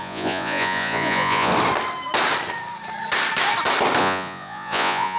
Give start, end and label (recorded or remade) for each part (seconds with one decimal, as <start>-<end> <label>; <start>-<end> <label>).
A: 0.0-1.5 remade; 1.5-4.0 recorded; 4.0-5.2 remade